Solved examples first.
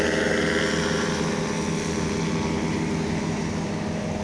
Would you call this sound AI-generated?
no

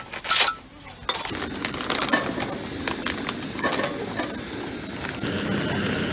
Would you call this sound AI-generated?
no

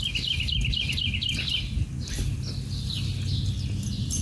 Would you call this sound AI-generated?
no